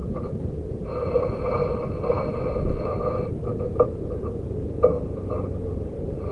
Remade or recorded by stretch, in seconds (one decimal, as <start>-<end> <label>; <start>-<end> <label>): 0.0-1.2 remade; 1.2-6.3 recorded